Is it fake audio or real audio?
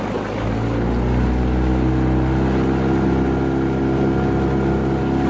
real